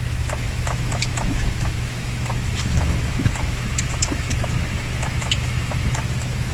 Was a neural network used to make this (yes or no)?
yes